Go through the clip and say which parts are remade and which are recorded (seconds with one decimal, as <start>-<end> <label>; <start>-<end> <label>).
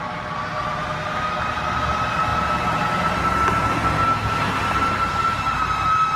0.0-6.2 recorded